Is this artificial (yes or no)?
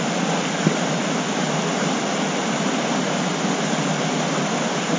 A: no